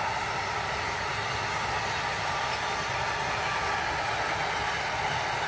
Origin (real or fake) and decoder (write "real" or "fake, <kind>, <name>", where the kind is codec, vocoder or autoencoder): real